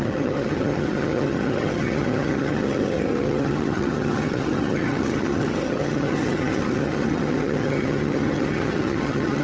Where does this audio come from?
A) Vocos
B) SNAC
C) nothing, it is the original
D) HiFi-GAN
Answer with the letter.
D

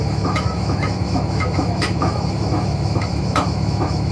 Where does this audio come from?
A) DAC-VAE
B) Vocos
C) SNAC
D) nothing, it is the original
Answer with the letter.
A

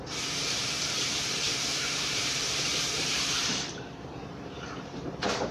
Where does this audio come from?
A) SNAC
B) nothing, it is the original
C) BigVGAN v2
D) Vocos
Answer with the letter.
C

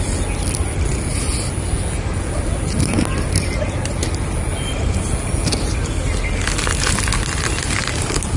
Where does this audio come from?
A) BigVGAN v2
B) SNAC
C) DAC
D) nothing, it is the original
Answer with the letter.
D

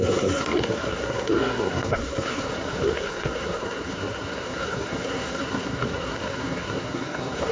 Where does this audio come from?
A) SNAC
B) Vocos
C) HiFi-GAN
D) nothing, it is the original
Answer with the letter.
A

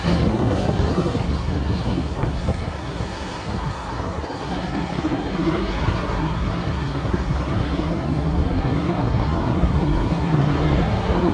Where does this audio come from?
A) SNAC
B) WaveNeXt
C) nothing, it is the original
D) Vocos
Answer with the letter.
A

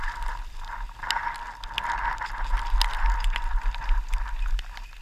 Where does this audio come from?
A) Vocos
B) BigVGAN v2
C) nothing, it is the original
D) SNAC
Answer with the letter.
C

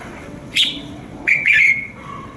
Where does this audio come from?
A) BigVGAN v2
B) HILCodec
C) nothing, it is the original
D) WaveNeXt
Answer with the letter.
D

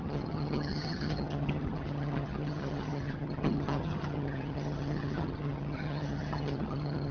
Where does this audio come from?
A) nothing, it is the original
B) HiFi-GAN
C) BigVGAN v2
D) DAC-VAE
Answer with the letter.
B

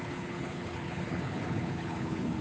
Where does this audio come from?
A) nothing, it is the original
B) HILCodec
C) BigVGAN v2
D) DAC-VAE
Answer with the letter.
B